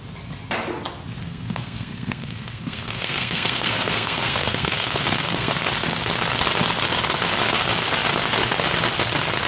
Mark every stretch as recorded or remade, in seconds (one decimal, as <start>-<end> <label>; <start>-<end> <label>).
0.0-1.2 recorded; 1.2-5.5 remade; 5.5-9.5 recorded